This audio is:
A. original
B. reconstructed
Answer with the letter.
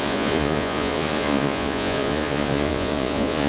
B